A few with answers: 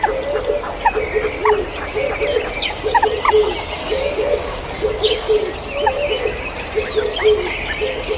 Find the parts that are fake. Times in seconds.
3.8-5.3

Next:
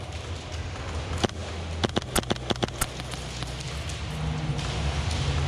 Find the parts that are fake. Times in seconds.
none

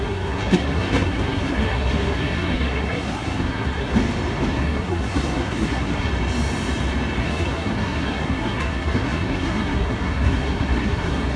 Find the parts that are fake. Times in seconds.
0.0-4.0; 4.5-6.1; 7.2-11.4

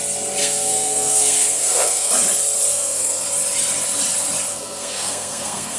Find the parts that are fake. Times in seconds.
0.4-2.1; 2.7-3.3; 4.5-5.8

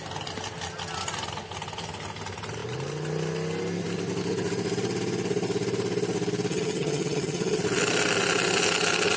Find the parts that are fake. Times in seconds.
6.5-7.6

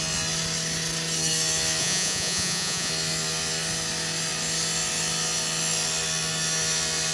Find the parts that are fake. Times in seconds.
1.8-2.9

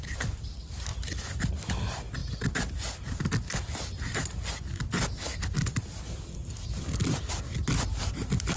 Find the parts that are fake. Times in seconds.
none

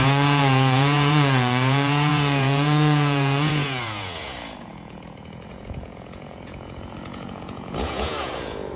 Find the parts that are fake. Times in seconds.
0.0-8.8